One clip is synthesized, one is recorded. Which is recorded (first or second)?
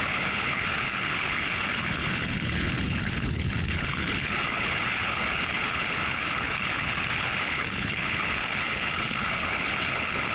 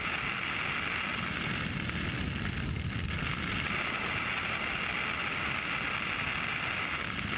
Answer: second